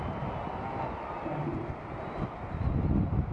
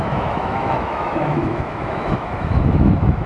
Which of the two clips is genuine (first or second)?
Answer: first